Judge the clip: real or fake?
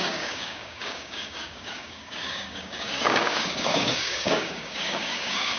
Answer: fake